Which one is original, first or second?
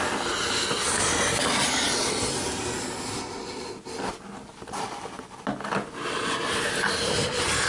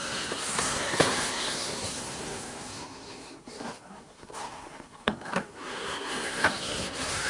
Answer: first